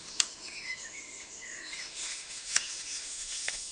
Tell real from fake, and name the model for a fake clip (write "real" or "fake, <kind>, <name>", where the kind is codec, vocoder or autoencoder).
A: fake, autoencoder, DAC-VAE